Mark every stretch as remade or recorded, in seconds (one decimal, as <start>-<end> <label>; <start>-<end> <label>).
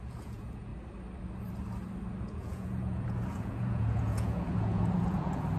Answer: 0.0-0.7 remade; 0.7-2.2 recorded; 2.2-5.6 remade